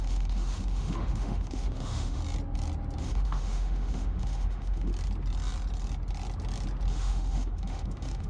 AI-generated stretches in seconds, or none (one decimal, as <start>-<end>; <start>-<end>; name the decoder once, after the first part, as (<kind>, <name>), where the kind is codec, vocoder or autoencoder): 0.0-2.2 (autoencoder, DAC-VAE); 3.0-4.9; 6.9-8.3